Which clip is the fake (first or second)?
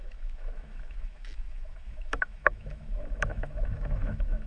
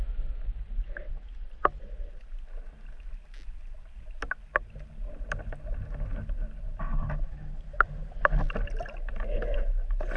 first